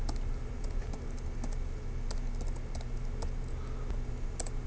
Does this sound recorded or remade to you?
recorded